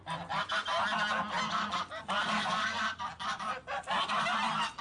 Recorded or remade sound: recorded